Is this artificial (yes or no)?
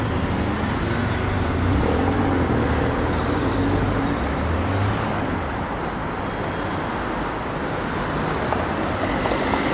no